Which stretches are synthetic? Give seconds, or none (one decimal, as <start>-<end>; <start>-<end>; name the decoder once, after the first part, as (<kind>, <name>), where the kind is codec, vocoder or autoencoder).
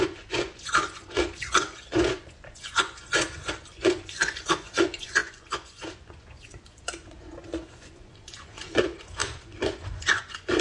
0.0-10.6 (vocoder, Vocos)